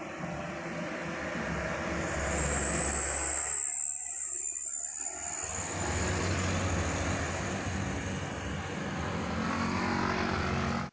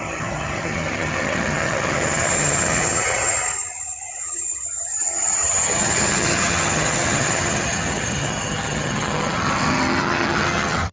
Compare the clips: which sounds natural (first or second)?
first